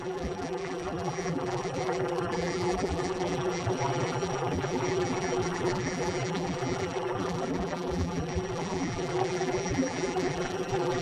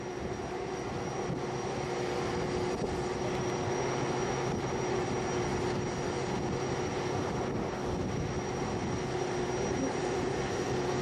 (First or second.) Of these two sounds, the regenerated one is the first